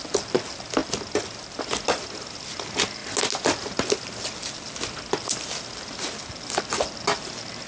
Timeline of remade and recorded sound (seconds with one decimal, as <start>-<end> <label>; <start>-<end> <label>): 0.0-7.7 recorded